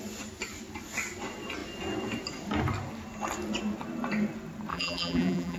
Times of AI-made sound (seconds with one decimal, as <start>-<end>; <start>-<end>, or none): 4.7-5.6